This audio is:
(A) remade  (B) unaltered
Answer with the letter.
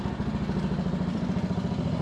A